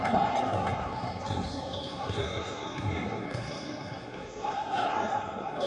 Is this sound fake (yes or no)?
yes